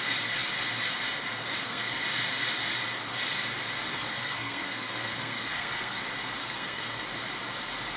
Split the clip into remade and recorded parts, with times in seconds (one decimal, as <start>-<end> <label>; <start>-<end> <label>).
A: 0.0-1.4 recorded; 1.4-1.9 remade; 1.9-3.9 recorded; 3.9-6.0 remade; 6.0-6.4 recorded; 6.4-7.0 remade; 7.0-8.0 recorded